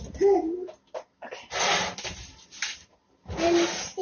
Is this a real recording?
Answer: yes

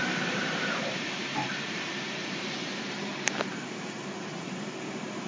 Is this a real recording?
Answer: no